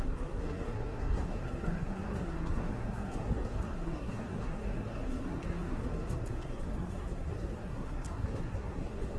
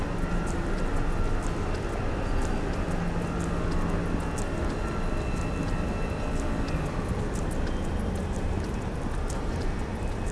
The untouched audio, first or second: second